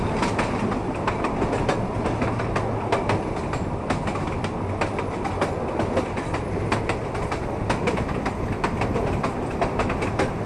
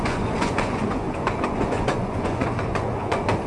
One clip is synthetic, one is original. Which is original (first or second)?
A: first